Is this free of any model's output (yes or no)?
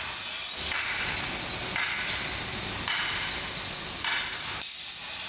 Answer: yes